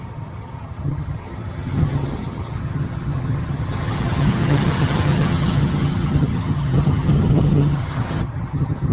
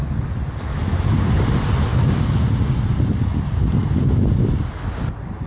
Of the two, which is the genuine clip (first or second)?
second